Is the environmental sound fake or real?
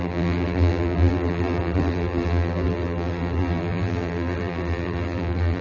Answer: fake